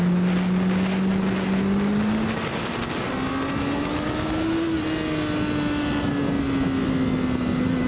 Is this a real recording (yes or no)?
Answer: yes